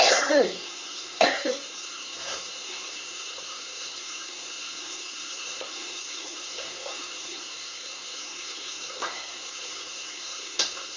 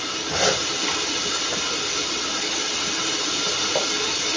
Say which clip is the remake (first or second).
first